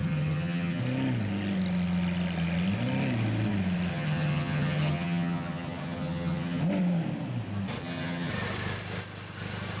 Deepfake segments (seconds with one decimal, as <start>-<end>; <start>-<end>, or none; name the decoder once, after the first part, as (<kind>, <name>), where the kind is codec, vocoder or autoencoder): 0.0-0.8 (vocoder, HiFi-GAN); 3.9-6.6; 7.8-8.3

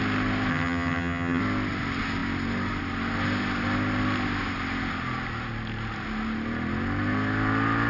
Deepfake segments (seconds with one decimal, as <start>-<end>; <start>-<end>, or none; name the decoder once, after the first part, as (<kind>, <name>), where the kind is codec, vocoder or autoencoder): 0.5-1.4 (vocoder, HiFi-GAN)

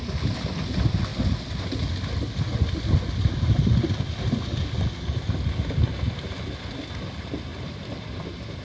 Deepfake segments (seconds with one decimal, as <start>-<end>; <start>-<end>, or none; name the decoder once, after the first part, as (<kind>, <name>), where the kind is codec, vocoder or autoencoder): none

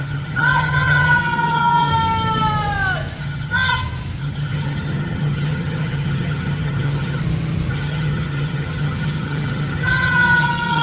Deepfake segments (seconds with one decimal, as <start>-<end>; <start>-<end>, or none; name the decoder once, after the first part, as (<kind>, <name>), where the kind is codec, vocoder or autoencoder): 0.0-1.9 (vocoder, HiFi-GAN); 3.2-3.7; 4.2-7.2; 7.7-10.8

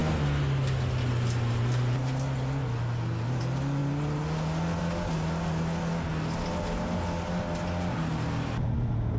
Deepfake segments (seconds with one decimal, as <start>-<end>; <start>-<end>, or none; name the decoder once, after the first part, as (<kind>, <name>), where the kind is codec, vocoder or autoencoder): none

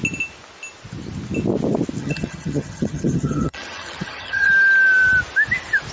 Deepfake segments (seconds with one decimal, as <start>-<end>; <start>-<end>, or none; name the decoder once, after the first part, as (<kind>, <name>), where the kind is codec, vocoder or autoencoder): 2.0-4.5 (vocoder, HiFi-GAN)

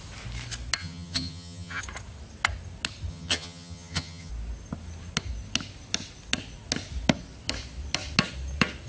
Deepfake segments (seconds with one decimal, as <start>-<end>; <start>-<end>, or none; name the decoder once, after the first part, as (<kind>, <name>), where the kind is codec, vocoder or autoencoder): 0.8-1.8 (vocoder, HiFi-GAN); 3.1-4.3

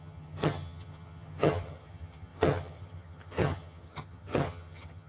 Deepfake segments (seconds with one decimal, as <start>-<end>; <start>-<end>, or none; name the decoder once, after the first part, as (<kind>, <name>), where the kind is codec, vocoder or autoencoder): 0.0-5.1 (vocoder, HiFi-GAN)